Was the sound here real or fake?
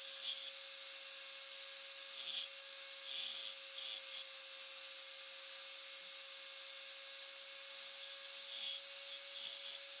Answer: real